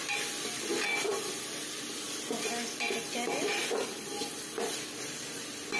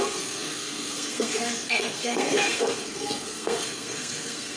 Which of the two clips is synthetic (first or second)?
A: second